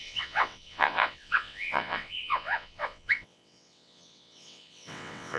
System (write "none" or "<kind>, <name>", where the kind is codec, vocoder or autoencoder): vocoder, WaveNeXt